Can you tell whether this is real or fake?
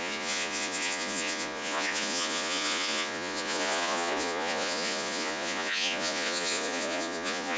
fake